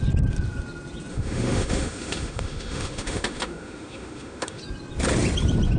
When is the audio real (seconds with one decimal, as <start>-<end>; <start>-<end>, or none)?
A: 0.0-1.1; 4.6-5.8